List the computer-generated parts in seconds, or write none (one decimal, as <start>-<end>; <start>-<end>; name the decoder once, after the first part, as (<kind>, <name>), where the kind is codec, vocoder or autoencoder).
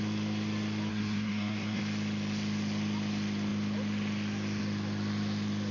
0.9-1.8 (codec, SNAC)